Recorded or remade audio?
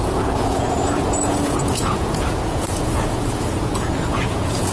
remade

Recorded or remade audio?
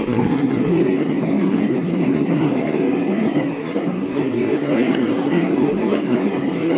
remade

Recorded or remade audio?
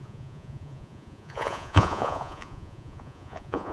remade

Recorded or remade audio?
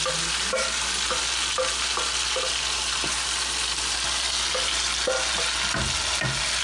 recorded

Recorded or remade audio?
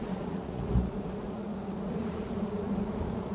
remade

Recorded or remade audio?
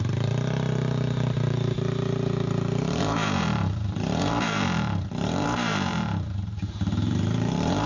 remade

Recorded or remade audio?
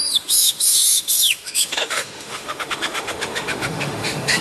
remade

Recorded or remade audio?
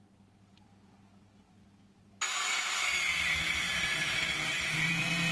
recorded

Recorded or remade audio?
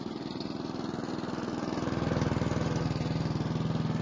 recorded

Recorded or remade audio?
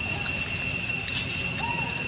recorded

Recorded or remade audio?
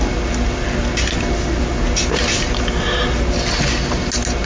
recorded